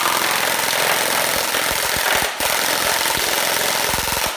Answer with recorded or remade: recorded